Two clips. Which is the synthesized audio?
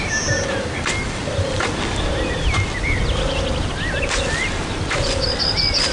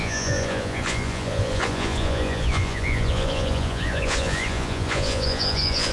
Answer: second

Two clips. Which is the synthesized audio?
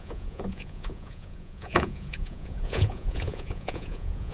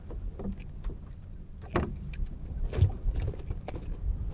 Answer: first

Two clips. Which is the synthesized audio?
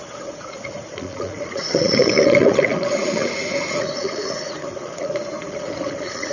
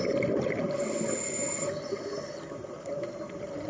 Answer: first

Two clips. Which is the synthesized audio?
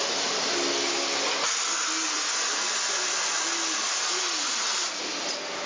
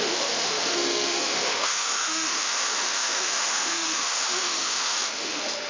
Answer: second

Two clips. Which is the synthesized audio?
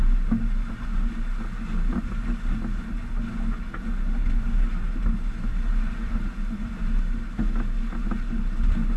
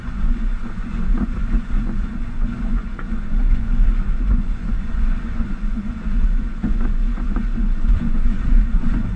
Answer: second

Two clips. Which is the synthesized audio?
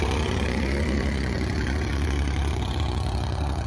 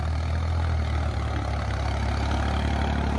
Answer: first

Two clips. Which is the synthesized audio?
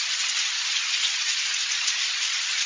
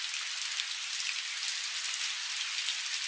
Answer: first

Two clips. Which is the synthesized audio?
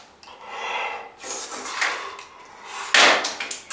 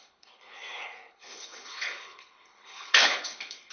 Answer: second